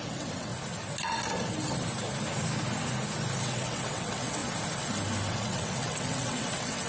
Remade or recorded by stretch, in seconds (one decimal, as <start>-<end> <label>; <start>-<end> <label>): 0.0-0.5 remade; 0.5-3.4 recorded; 3.4-4.4 remade; 4.4-5.3 recorded; 5.3-6.9 remade